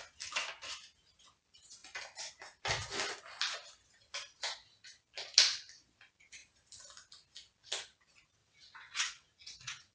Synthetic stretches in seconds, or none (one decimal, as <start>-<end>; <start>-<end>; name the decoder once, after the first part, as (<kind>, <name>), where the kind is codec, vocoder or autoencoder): 8.4-9.9 (vocoder, WaveNeXt)